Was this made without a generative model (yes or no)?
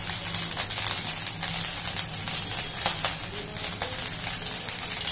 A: yes